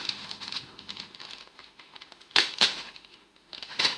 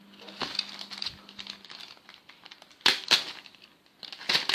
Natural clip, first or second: second